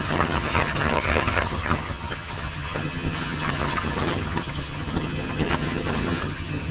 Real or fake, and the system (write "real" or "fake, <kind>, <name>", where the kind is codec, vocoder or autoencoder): fake, vocoder, HiFi-GAN